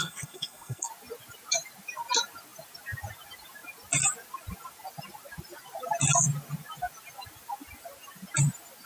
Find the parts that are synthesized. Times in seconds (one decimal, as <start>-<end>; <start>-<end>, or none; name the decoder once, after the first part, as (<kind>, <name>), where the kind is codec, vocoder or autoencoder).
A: 0.0-0.9 (codec, SNAC)